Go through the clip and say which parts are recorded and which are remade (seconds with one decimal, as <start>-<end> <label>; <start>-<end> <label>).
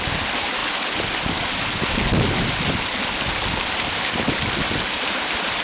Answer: 0.0-5.6 recorded